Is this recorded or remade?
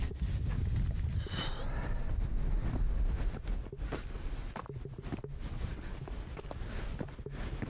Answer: recorded